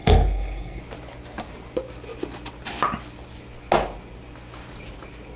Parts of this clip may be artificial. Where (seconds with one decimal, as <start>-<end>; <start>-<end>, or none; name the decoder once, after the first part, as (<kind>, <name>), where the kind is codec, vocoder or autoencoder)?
0.0-0.8 (codec, SNAC)